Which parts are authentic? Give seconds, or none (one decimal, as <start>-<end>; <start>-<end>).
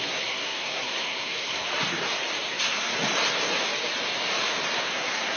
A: 1.7-2.5; 2.9-4.9